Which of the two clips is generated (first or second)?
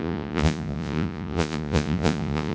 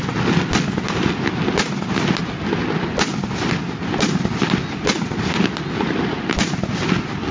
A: first